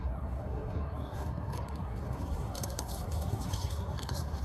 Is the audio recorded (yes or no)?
no